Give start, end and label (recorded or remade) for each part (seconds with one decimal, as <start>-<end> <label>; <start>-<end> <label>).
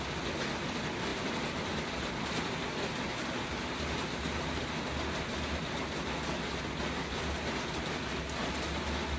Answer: 0.0-9.2 recorded